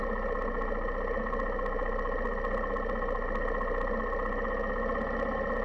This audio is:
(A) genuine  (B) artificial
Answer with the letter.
A